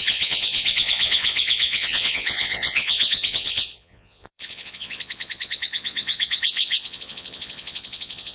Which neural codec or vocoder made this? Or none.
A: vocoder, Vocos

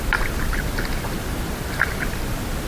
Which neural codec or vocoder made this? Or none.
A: none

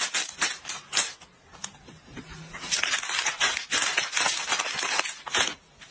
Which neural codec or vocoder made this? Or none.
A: none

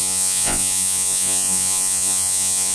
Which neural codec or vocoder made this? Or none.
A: vocoder, Vocos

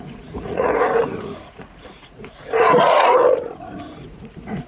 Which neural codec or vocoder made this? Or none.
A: vocoder, Vocos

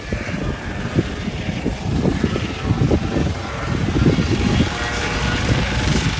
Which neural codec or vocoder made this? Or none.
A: none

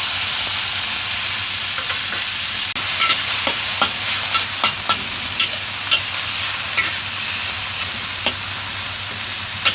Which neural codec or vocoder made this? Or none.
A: none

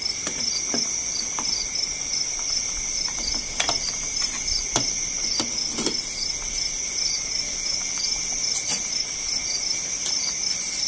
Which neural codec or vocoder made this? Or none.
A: none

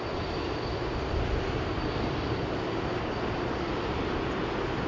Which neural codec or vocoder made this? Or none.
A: none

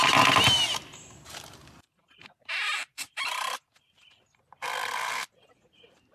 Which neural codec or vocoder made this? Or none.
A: none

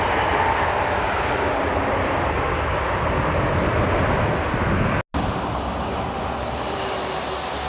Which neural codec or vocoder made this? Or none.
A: none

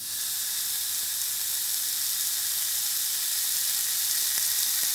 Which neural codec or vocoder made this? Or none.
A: none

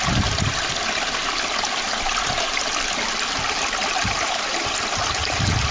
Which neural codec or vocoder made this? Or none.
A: none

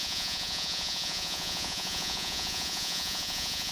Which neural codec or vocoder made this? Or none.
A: vocoder, Vocos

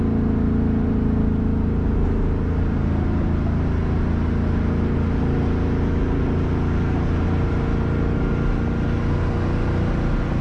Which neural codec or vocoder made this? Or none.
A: none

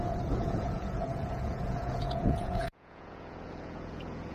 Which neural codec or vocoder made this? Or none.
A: vocoder, Vocos